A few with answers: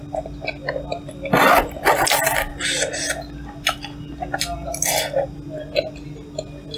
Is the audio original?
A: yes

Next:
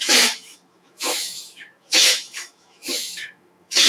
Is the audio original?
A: no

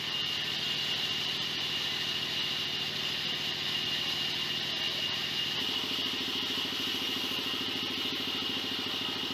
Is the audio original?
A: yes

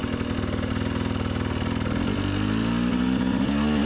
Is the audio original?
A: yes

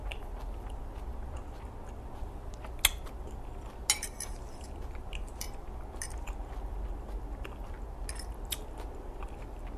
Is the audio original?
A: yes